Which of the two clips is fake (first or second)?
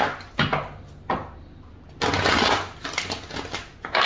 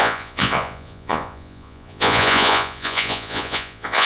second